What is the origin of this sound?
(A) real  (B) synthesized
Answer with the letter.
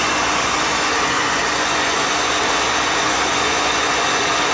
B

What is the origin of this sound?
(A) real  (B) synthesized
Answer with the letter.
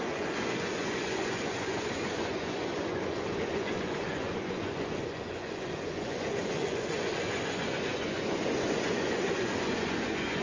B